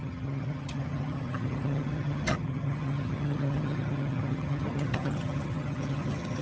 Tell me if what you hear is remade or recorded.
remade